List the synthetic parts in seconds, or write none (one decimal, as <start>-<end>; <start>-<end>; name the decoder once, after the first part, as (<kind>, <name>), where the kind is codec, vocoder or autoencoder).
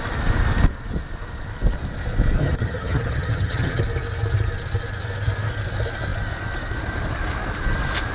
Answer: 2.4-3.8 (vocoder, HiFi-GAN)